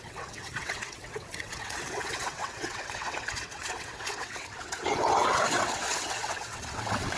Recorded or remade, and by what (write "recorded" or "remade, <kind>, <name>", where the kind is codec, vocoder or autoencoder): remade, vocoder, WaveNeXt